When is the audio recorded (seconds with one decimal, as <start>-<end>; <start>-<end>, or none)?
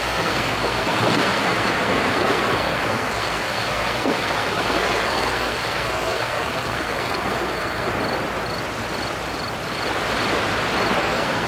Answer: 7.9-11.0